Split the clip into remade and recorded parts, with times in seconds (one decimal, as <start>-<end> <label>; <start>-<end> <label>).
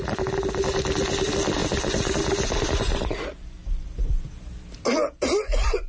0.0-5.9 recorded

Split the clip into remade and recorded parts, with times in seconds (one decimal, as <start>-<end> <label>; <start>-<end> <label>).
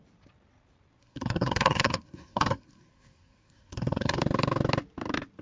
0.0-1.0 recorded; 1.0-4.2 remade; 4.2-5.4 recorded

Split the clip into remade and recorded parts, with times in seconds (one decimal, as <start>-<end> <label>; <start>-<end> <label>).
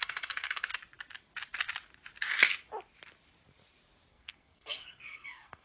0.0-0.7 remade; 0.7-4.1 recorded; 4.1-5.6 remade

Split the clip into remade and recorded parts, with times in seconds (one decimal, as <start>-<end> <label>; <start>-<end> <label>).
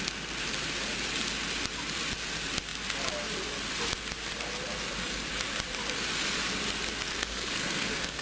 0.0-7.1 recorded; 7.1-8.2 remade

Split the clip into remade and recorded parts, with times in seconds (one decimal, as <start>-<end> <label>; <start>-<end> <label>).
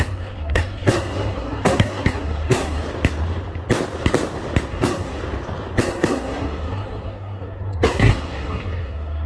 0.0-2.8 remade; 2.8-4.7 recorded; 4.7-5.2 remade; 5.2-5.8 recorded; 5.8-9.3 remade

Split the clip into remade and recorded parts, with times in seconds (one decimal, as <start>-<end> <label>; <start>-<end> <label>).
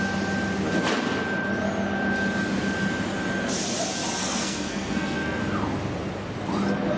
0.0-4.2 recorded; 4.2-5.4 remade; 5.4-7.0 recorded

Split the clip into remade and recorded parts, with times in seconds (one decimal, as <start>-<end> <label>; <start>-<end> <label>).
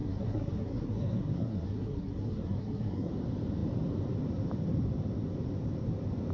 0.0-3.1 remade; 3.1-6.3 recorded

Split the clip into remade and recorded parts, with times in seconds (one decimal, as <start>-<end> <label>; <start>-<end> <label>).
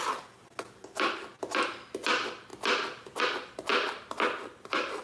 0.0-5.0 recorded